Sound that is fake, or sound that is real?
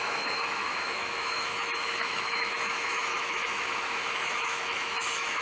fake